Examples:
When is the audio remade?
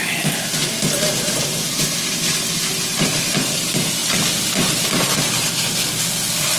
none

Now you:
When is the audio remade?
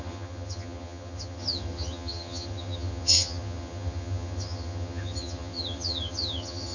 0.0-6.7 (vocoder, HiFi-GAN)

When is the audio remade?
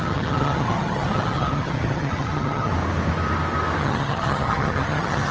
0.0-2.7 (vocoder, HiFi-GAN); 3.8-5.3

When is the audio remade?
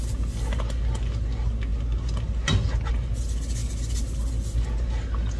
none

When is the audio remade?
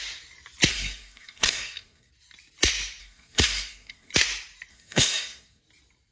0.7-2.1 (codec, SNAC); 3.0-4.1; 4.7-5.6